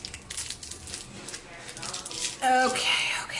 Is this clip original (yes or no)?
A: yes